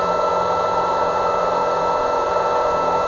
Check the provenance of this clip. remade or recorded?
remade